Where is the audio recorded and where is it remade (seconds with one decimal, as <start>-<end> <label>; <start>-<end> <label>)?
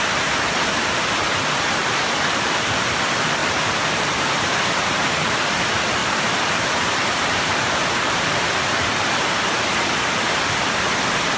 0.0-3.4 recorded; 3.4-5.6 remade; 5.6-6.0 recorded; 6.0-9.6 remade; 9.6-11.4 recorded